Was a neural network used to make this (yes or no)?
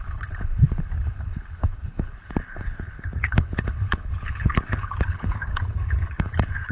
yes